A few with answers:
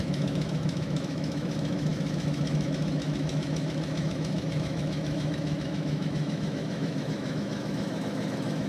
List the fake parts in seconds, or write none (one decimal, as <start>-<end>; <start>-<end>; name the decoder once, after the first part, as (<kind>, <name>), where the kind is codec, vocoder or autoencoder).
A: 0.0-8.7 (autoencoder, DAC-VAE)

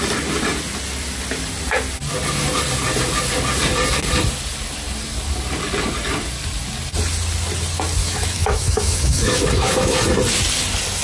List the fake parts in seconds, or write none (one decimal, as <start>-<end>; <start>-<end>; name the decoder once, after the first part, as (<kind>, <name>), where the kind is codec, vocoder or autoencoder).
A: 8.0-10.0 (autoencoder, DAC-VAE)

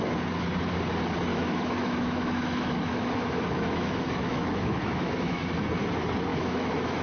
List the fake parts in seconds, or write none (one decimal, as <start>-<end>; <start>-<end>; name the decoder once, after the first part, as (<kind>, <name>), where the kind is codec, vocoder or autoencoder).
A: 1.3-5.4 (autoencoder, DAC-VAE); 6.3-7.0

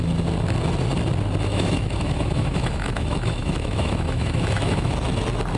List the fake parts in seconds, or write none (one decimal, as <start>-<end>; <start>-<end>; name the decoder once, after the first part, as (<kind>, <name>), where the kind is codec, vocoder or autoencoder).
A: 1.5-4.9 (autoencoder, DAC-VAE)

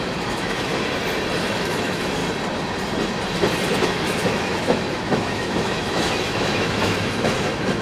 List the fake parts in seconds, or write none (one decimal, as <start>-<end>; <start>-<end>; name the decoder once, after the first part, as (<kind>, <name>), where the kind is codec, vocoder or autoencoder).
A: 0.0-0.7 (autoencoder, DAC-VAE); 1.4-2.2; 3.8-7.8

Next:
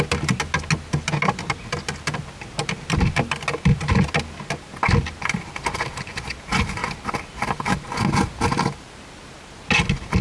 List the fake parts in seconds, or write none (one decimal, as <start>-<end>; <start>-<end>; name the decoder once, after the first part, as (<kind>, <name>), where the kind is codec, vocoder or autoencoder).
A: none

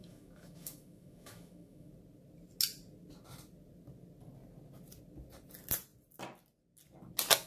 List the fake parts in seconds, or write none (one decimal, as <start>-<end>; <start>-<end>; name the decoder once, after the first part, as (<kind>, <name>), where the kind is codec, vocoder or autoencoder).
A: 0.0-1.9 (autoencoder, DAC-VAE)